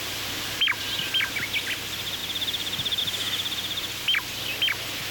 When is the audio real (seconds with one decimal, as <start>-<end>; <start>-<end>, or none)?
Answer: 0.0-5.1